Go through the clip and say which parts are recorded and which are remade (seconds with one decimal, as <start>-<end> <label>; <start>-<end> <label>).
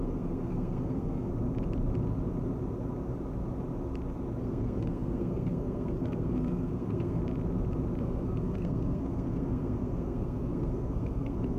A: 0.0-1.3 remade; 1.3-4.4 recorded; 4.4-7.2 remade; 7.2-8.0 recorded; 8.0-11.6 remade